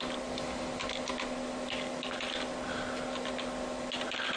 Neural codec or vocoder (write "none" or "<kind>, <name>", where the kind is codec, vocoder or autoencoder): none